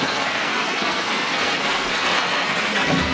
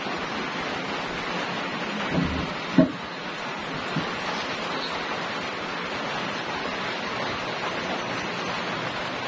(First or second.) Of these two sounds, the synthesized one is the first